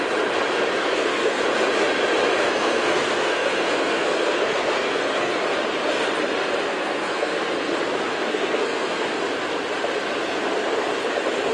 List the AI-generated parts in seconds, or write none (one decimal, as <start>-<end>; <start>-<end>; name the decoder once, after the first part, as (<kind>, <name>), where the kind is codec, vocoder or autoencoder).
0.8-1.4 (codec, SNAC); 2.4-5.3; 6.7-7.4; 8.1-9.0